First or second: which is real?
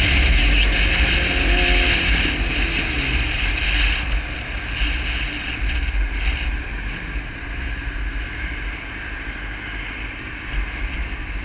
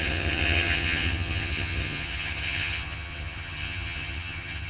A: first